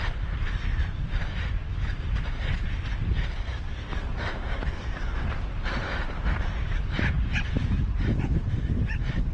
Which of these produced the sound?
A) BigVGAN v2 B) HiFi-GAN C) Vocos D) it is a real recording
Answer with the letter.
A